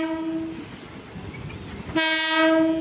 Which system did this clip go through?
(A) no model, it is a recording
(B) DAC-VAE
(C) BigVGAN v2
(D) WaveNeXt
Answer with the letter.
A